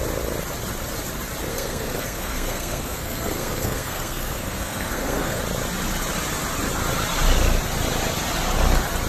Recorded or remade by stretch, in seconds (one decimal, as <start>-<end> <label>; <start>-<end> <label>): 0.0-1.5 recorded; 1.5-5.4 remade; 5.4-9.1 recorded